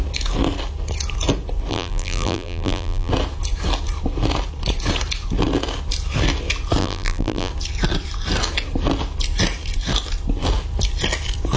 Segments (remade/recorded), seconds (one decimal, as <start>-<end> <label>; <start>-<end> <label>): 0.0-1.7 recorded; 1.7-3.1 remade; 3.1-6.8 recorded; 6.8-7.5 remade; 7.5-11.6 recorded